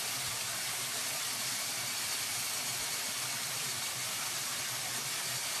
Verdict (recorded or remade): recorded